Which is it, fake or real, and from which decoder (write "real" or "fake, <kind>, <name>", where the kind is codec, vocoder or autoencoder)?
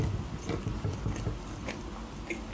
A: real